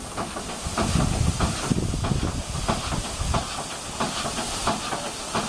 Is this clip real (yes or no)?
yes